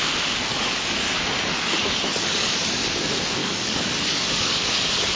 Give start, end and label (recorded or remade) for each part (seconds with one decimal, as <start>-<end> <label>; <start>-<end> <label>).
0.0-0.5 recorded; 0.5-3.0 remade; 3.0-3.4 recorded; 3.4-5.2 remade